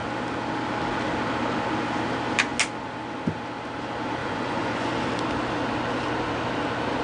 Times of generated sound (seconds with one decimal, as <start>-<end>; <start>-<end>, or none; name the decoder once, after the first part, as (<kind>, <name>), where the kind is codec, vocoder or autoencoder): 4.2-4.9 (vocoder, Vocos)